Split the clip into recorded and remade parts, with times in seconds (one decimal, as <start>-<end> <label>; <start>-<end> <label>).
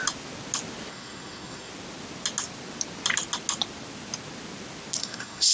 0.0-0.9 recorded; 0.9-1.7 remade; 1.7-5.0 recorded; 5.0-5.5 remade